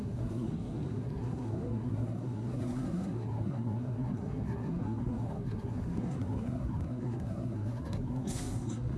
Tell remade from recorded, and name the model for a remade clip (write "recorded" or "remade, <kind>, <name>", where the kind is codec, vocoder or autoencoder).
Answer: remade, codec, SNAC